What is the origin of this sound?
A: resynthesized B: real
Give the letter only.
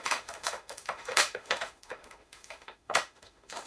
A